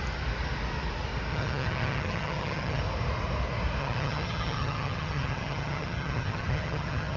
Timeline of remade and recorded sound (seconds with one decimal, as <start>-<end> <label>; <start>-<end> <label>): 0.0-1.3 recorded; 1.3-2.8 remade; 2.8-3.8 recorded; 3.8-7.2 remade